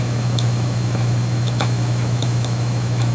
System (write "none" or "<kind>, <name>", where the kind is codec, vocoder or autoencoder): autoencoder, DAC-VAE